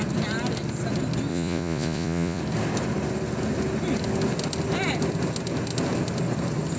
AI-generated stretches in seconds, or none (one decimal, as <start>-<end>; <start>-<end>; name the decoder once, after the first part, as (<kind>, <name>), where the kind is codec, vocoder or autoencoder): 1.3-2.4 (vocoder, Vocos)